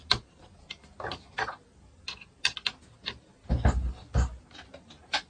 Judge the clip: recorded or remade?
recorded